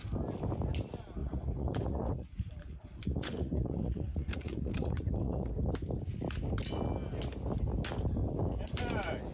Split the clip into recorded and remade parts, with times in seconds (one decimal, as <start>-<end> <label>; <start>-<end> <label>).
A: 0.0-1.2 recorded; 1.2-5.5 remade; 5.5-9.3 recorded